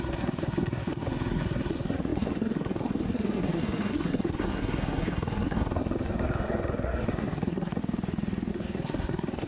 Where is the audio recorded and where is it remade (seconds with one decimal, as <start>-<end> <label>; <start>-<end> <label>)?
0.0-7.8 remade; 7.8-8.5 recorded; 8.5-9.5 remade